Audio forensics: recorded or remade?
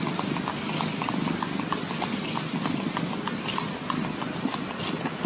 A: recorded